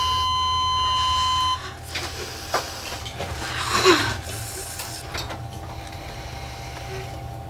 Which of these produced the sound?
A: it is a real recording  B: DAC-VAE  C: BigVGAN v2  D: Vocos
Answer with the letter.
A